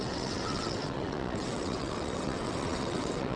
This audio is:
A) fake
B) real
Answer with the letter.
A